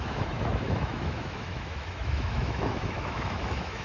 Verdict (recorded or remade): remade